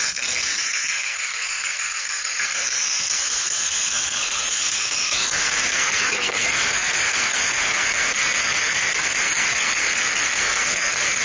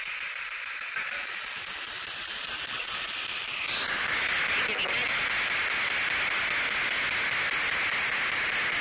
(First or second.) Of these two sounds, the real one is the second